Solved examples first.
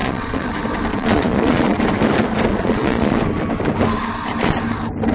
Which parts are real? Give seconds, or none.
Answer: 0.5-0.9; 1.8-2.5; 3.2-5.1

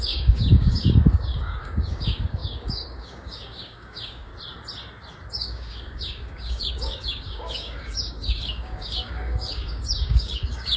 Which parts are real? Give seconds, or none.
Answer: 4.3-5.3

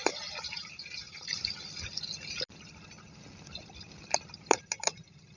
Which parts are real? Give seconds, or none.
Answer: 1.3-4.5

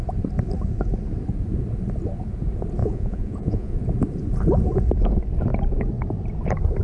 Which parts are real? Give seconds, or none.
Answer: 0.0-2.8; 3.8-6.8

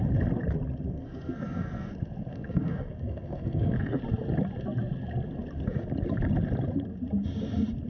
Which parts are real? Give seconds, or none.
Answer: 0.0-0.9; 1.9-2.3; 4.0-7.9

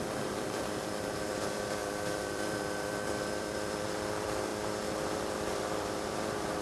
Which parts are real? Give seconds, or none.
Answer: 4.5-5.5